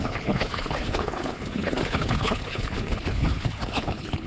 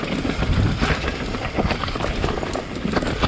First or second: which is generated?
first